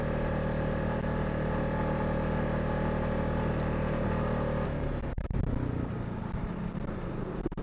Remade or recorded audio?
recorded